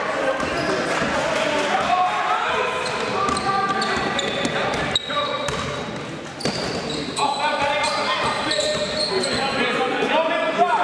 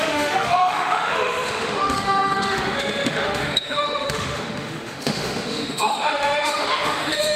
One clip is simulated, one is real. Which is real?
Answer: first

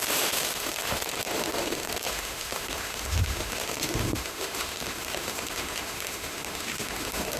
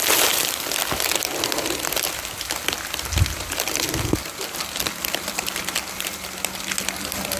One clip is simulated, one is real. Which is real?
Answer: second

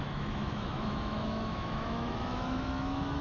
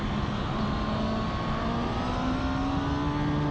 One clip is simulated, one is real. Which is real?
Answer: second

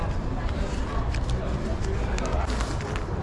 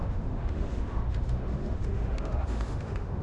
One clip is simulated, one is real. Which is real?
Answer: first